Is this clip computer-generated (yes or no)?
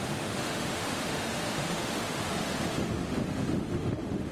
yes